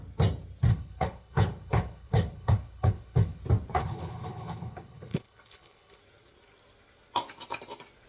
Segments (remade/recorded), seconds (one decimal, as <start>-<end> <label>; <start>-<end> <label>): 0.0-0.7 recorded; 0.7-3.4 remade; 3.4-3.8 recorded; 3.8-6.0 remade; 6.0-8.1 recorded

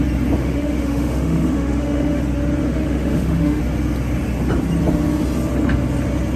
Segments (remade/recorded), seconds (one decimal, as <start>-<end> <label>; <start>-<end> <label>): 0.0-0.4 recorded; 0.4-2.2 remade; 2.2-2.6 recorded; 2.6-3.6 remade; 3.6-6.4 recorded

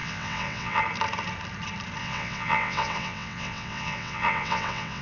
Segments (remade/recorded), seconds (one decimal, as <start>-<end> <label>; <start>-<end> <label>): 0.0-0.8 remade; 0.8-2.0 recorded; 2.0-5.0 remade

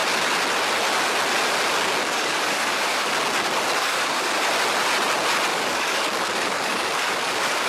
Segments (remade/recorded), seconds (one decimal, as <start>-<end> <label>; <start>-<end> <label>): 0.0-2.0 recorded; 2.0-3.1 remade; 3.1-3.8 recorded; 3.8-4.4 remade; 4.4-5.5 recorded; 5.5-7.7 remade

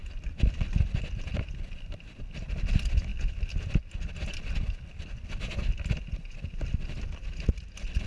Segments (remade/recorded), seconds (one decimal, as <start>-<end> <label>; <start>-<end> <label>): 0.0-8.1 recorded

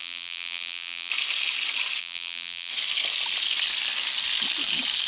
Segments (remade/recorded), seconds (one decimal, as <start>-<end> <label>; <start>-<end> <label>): 0.0-1.1 remade; 1.1-2.0 recorded; 2.0-2.7 remade; 2.7-5.1 recorded